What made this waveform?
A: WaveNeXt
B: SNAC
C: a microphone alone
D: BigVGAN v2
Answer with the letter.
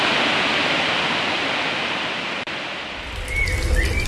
C